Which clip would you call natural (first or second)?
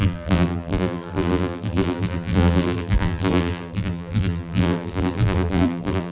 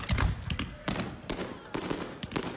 second